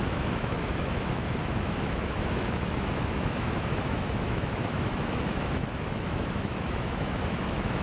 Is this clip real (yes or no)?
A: no